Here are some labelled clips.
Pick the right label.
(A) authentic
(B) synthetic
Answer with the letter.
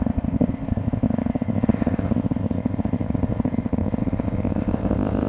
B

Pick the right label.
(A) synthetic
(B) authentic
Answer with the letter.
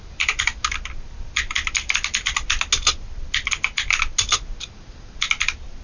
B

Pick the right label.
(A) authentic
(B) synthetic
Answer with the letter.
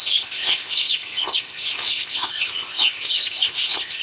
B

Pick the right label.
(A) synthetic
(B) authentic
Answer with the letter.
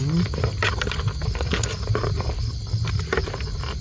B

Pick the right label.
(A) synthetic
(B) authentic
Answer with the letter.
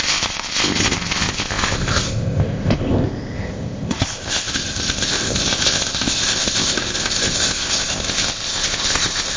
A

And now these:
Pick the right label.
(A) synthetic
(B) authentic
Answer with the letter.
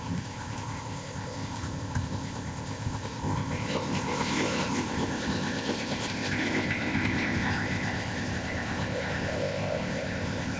A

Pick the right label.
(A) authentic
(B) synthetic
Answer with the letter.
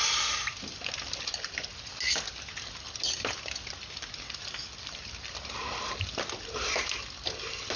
A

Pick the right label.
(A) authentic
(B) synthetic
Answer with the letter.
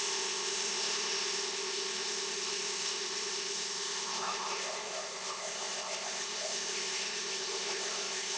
B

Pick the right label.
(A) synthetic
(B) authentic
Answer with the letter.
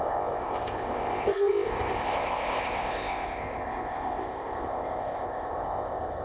A